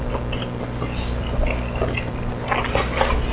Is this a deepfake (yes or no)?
no